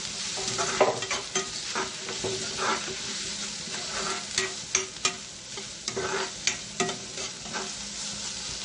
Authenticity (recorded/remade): recorded